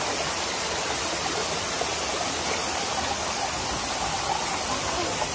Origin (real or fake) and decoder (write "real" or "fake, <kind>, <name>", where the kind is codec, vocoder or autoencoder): real